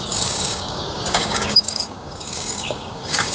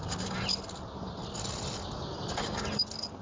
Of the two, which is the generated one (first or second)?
first